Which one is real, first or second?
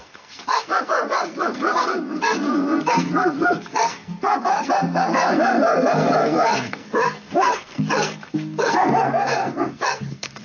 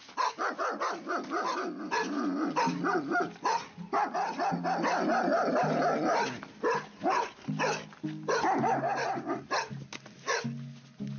second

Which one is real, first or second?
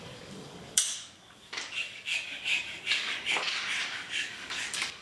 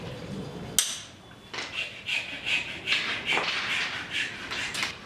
second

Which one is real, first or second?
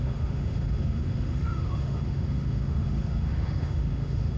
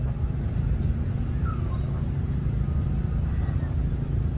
second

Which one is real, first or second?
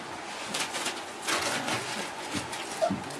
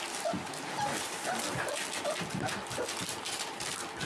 second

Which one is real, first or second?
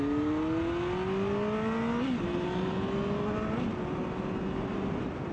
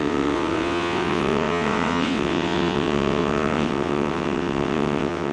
first